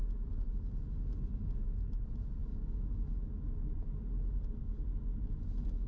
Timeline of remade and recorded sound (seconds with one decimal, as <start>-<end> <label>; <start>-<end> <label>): 0.0-5.9 recorded